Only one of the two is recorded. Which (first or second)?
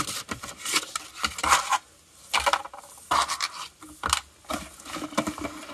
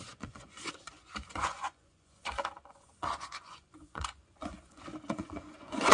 first